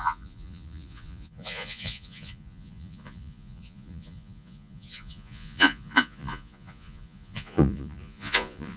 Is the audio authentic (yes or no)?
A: no